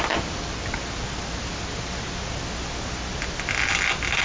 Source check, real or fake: real